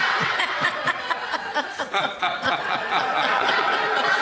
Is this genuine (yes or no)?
no